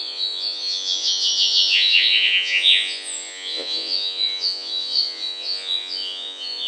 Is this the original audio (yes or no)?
no